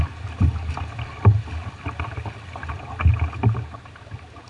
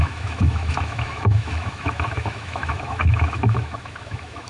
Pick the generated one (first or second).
second